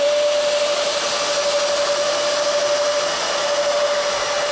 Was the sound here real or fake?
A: real